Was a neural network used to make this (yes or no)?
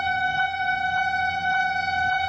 yes